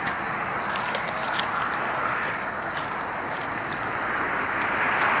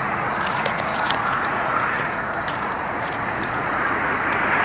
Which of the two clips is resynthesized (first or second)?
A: second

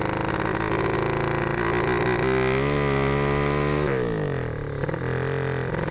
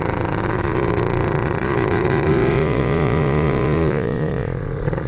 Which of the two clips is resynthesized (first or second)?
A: second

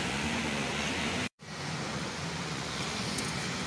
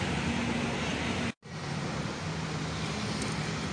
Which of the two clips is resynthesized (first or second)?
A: first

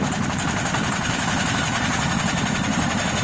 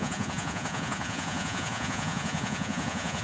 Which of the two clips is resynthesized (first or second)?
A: second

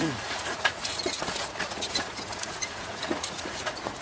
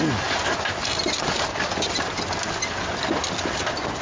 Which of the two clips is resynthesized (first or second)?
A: first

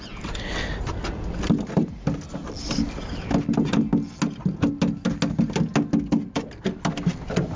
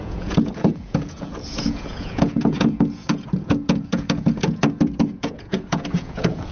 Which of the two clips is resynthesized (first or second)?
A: second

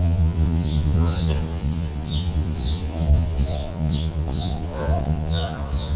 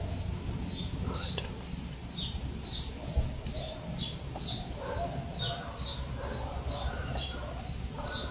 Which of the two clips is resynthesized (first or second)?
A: first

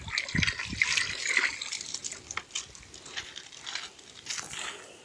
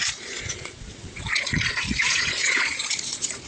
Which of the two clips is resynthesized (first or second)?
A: second